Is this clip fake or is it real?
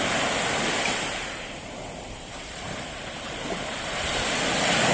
real